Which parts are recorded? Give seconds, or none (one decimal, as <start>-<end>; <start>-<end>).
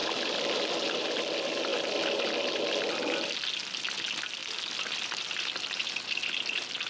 1.2-6.9